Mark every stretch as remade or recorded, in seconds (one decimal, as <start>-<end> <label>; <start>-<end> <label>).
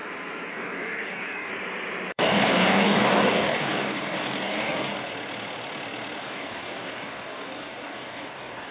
0.0-0.5 recorded; 0.5-1.5 remade; 1.5-2.1 recorded; 2.1-4.9 remade; 4.9-6.2 recorded; 6.2-8.7 remade